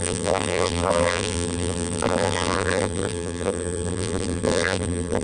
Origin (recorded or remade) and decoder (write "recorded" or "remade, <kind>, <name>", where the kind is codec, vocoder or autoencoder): remade, vocoder, BigVGAN v2